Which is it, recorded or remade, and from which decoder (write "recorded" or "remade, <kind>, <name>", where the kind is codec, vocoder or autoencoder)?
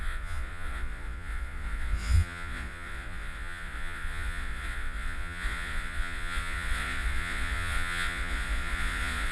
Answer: remade, vocoder, Vocos